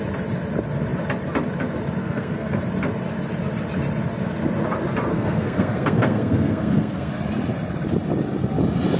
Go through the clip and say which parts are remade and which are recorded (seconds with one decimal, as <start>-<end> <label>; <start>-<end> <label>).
0.0-2.0 recorded; 2.0-2.6 remade; 2.6-5.1 recorded; 5.1-7.1 remade; 7.1-9.0 recorded